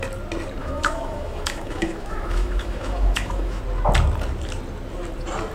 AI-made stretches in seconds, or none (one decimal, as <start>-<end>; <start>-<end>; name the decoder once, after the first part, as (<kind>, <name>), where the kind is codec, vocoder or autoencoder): 0.6-3.6 (autoencoder, DAC-VAE)